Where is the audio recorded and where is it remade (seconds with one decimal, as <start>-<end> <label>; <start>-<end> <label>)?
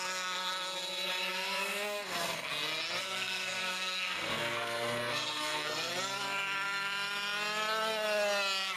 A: 0.0-0.5 remade; 0.5-1.3 recorded; 1.3-2.5 remade; 2.5-3.0 recorded; 3.0-5.9 remade; 5.9-8.8 recorded